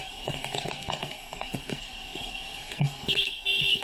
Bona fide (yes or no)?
no